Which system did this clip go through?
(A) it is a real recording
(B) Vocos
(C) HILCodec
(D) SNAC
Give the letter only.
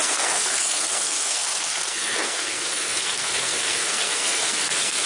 D